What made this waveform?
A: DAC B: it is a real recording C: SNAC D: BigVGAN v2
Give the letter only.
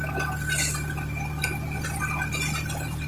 B